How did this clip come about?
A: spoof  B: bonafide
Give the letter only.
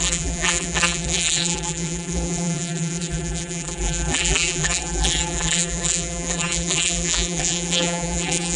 A